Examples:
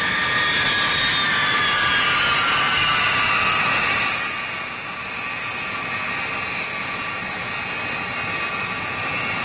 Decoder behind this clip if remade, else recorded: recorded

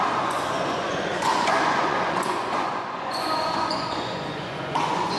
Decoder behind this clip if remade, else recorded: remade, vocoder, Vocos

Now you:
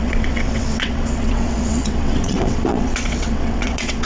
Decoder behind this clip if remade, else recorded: remade, vocoder, WaveNeXt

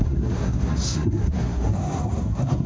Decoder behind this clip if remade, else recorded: remade, codec, SNAC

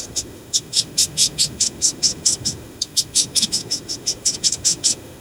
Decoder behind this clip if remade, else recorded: remade, autoencoder, DAC-VAE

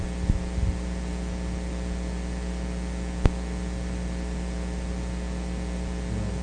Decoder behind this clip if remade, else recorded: recorded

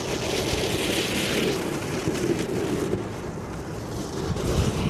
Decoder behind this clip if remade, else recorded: recorded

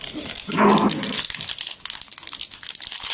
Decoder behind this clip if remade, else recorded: recorded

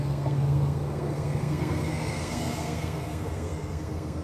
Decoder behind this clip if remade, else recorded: remade, codec, SNAC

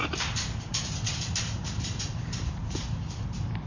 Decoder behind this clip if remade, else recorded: remade, vocoder, BigVGAN v2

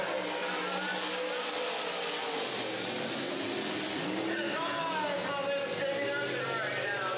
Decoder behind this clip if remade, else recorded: recorded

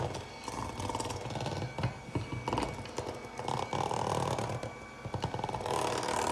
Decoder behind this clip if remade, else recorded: recorded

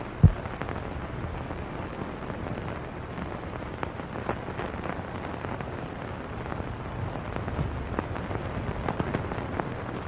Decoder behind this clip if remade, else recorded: recorded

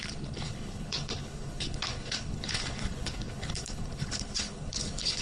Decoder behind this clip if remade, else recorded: remade, codec, HILCodec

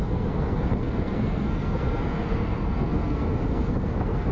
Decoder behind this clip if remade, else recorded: remade, codec, SNAC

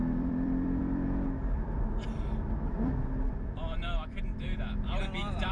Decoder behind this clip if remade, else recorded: remade, vocoder, BigVGAN v2